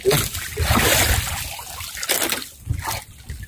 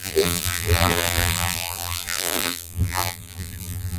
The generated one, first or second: second